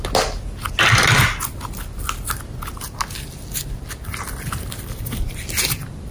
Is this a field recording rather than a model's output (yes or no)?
yes